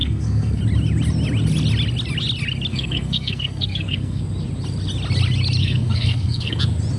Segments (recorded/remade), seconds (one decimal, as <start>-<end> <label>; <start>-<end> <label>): 0.0-0.6 remade; 0.6-2.7 recorded; 2.7-4.2 remade; 4.2-5.6 recorded; 5.6-6.6 remade; 6.6-7.0 recorded